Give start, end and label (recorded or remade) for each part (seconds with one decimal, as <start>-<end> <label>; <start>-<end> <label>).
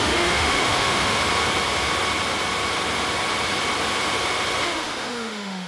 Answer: 0.0-1.2 remade; 1.2-4.6 recorded; 4.6-5.7 remade